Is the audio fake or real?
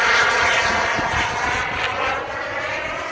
real